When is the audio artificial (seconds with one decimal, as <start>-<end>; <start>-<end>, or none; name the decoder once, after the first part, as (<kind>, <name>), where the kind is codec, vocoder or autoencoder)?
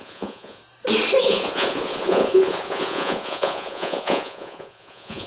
0.0-0.6 (vocoder, Vocos); 1.2-5.3